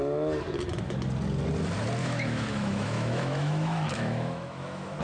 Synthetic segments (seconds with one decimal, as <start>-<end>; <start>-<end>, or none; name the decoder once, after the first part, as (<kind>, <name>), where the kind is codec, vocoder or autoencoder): 2.0-5.0 (autoencoder, DAC-VAE)